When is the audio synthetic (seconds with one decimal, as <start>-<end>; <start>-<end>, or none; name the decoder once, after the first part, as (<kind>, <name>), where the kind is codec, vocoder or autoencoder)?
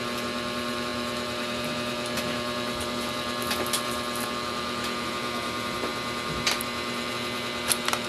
0.0-8.1 (vocoder, BigVGAN v2)